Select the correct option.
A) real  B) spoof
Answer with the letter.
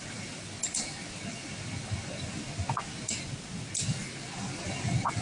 A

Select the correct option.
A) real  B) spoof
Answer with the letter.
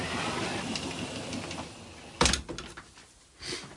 A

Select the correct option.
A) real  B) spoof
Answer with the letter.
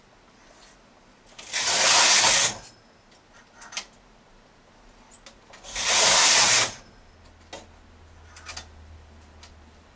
A